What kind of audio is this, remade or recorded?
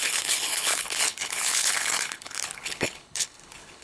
remade